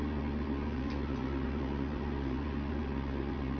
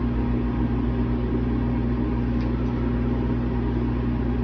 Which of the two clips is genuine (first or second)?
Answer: second